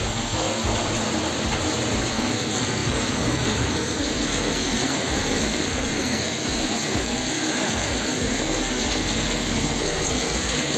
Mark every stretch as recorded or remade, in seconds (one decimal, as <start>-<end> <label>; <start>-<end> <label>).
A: 0.0-0.7 remade; 0.7-2.1 recorded; 2.1-10.8 remade